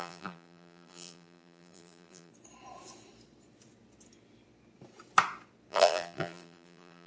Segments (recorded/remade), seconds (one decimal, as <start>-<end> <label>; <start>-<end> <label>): 0.0-2.3 remade; 2.3-5.7 recorded; 5.7-7.1 remade